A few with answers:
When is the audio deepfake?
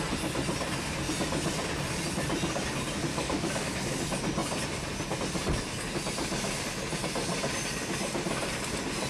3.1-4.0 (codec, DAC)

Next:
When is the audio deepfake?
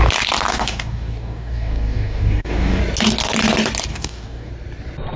0.5-2.8 (codec, DAC); 3.9-4.5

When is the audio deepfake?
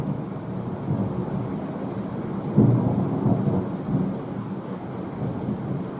4.3-4.9 (codec, DAC)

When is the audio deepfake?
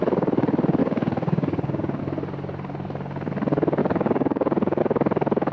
0.8-2.0 (codec, DAC); 3.8-4.8